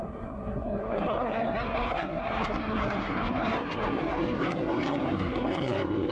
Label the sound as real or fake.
fake